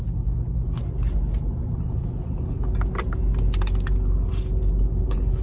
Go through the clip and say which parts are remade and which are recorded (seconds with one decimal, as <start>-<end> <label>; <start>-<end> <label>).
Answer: 0.0-0.8 remade; 0.8-1.7 recorded; 1.7-2.7 remade; 2.7-4.8 recorded; 4.8-5.4 remade